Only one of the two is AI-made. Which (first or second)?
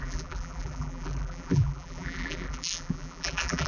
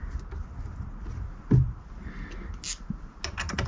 first